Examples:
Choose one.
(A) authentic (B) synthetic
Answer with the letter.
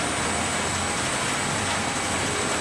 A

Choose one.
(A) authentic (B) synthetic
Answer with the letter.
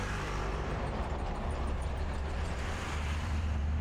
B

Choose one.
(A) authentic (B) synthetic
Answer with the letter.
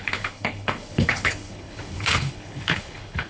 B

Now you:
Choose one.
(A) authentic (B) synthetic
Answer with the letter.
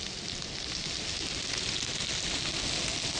A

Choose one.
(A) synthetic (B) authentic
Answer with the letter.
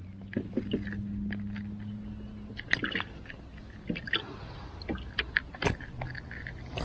B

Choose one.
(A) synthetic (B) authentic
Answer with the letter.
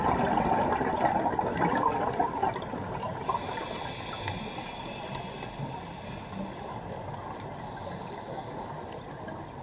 B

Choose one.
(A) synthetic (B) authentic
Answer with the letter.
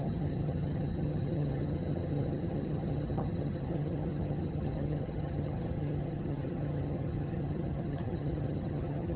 A